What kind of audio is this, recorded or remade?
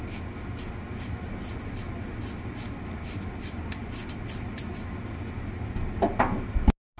recorded